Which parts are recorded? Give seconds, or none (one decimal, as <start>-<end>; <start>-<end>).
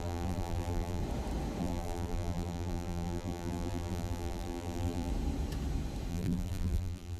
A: 1.0-1.6; 5.1-6.1